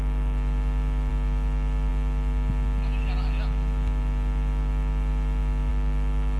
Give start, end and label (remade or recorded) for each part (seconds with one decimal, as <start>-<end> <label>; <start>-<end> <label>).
0.0-6.4 recorded